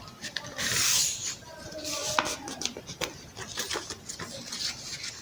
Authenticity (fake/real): real